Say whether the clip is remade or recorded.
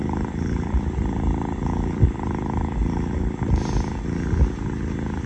recorded